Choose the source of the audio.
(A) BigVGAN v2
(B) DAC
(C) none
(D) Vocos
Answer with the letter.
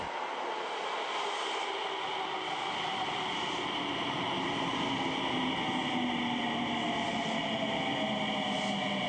C